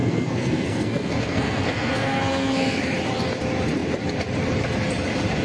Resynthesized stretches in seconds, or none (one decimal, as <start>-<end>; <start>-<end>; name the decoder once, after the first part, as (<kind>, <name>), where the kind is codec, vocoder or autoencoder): 0.0-2.8 (codec, SNAC)